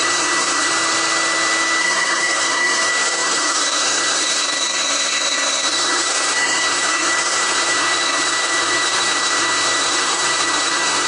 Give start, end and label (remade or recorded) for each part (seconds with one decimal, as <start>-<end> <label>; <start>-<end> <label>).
0.0-0.7 remade; 0.7-1.8 recorded; 1.8-11.1 remade